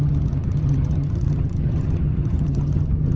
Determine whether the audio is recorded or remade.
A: remade